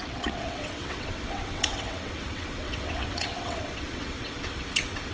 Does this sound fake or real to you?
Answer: fake